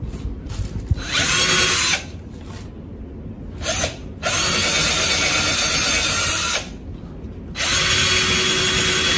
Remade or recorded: recorded